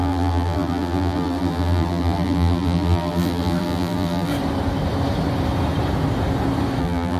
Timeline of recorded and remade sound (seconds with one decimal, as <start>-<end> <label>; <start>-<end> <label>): 0.0-4.3 remade; 4.3-6.8 recorded; 6.8-7.2 remade